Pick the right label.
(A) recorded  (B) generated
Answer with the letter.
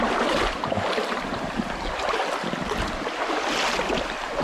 A